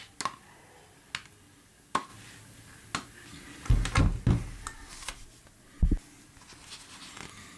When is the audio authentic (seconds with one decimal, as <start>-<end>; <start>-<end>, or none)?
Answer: 0.0-7.6